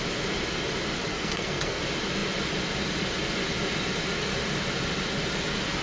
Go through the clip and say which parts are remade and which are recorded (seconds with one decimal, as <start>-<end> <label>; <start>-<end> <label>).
0.0-1.1 recorded; 1.1-1.8 remade; 1.8-5.8 recorded